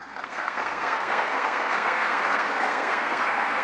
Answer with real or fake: fake